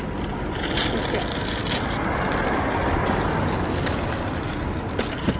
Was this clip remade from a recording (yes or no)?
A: no